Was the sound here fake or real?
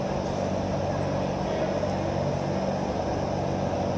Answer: real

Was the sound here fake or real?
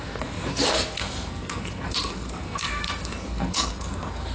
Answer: fake